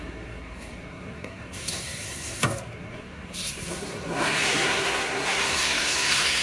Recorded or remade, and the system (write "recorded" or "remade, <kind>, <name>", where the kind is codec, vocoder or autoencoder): remade, codec, SNAC